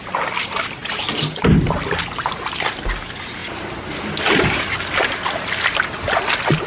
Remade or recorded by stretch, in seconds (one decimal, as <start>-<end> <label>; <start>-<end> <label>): 0.0-6.7 recorded